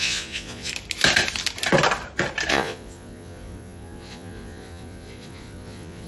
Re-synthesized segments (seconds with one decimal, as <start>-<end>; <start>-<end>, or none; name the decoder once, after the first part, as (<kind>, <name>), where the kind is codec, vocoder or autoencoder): 0.0-0.7 (vocoder, Vocos); 2.5-6.1